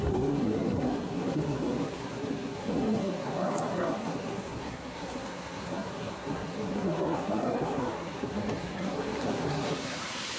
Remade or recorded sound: remade